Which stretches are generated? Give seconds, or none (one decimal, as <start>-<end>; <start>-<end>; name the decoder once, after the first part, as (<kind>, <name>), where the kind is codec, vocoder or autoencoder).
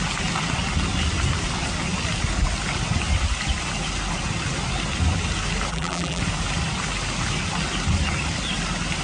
5.7-6.2 (vocoder, BigVGAN v2)